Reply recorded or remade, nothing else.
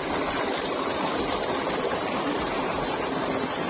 recorded